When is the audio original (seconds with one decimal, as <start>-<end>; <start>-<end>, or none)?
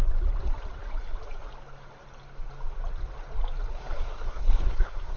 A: 0.0-3.7